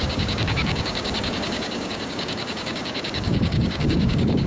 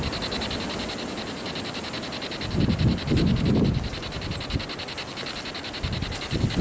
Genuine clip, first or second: second